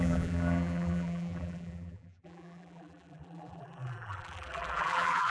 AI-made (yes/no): yes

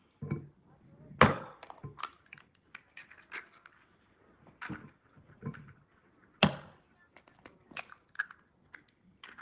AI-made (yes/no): no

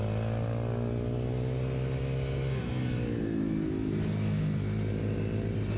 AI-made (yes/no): no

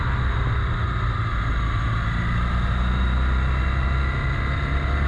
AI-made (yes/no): no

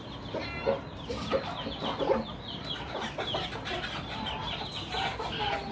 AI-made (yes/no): no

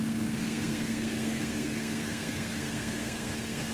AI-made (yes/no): yes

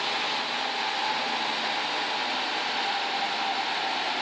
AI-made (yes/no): no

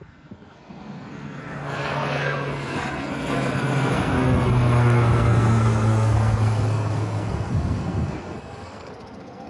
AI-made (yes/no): yes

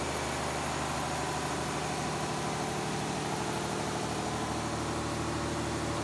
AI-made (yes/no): no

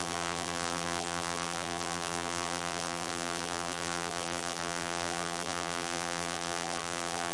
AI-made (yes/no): yes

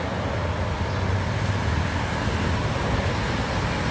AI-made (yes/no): no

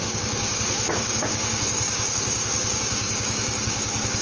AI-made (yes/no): yes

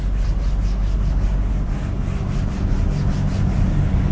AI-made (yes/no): no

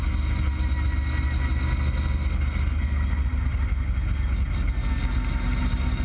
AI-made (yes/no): no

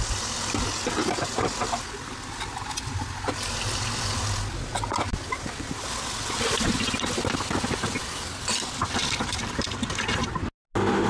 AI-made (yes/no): no